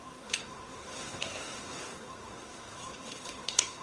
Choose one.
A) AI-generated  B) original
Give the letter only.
A